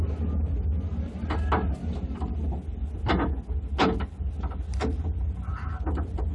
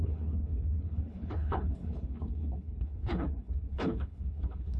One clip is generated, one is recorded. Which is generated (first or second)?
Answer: second